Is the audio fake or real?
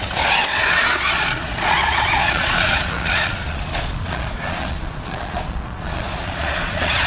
fake